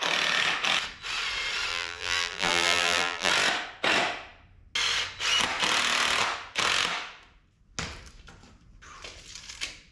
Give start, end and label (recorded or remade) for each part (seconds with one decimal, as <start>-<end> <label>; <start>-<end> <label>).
0.0-1.7 recorded; 1.7-3.3 remade; 3.3-9.9 recorded